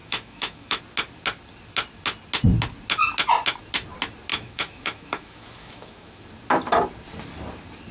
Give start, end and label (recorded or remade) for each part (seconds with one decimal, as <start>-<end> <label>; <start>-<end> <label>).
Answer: 0.0-0.8 remade; 0.8-4.3 recorded; 4.3-6.2 remade; 6.2-7.9 recorded